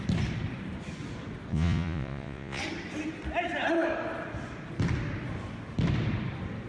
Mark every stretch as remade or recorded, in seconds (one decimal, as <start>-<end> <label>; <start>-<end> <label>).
0.0-1.5 recorded; 1.5-2.6 remade; 2.6-6.7 recorded